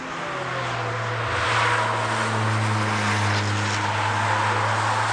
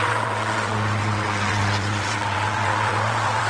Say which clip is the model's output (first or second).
second